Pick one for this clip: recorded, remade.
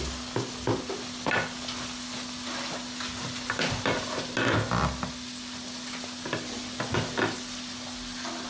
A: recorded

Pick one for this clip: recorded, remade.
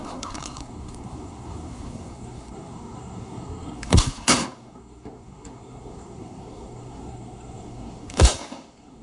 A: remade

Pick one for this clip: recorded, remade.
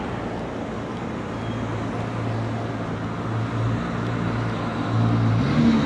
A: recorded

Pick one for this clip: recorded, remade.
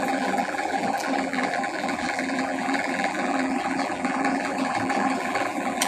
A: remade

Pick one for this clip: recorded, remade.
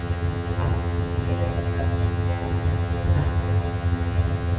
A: remade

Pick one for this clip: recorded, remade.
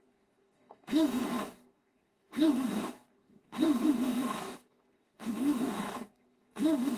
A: remade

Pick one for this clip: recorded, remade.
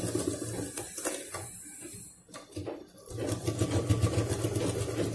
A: recorded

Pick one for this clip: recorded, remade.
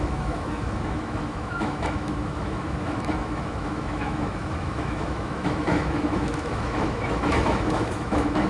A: remade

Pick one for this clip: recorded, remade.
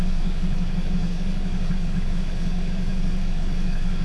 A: remade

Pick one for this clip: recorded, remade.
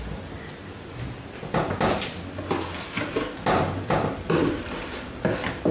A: recorded